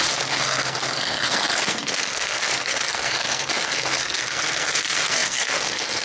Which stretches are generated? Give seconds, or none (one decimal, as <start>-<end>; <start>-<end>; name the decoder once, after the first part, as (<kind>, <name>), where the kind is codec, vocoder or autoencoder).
0.0-6.0 (codec, SNAC)